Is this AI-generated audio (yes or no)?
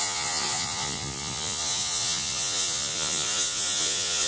yes